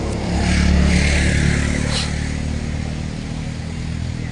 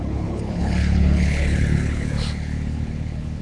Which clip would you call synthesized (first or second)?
second